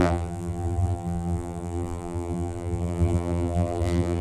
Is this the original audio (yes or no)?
no